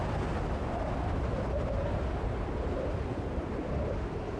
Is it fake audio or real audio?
real